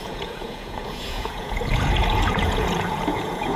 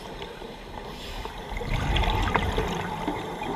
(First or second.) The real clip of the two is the second